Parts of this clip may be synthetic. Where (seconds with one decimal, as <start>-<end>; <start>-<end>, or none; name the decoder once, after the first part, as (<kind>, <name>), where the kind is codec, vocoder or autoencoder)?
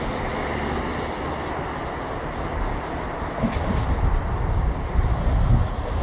none